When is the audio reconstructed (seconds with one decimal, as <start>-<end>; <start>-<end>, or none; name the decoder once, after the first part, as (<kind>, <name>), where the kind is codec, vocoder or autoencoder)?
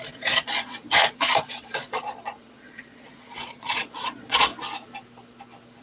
0.0-4.5 (vocoder, Vocos)